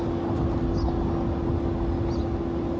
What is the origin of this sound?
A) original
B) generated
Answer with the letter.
A